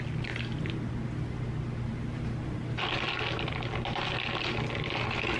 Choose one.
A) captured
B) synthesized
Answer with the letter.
A